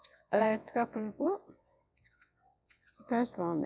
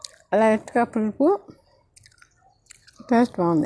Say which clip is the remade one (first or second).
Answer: first